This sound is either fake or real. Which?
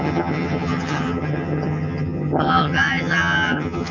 fake